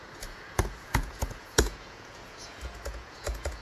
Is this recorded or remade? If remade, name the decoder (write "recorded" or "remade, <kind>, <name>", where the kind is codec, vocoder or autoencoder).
remade, vocoder, Vocos